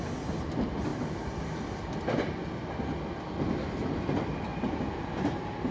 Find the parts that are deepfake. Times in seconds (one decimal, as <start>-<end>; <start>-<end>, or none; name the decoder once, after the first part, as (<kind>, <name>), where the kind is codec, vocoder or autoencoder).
none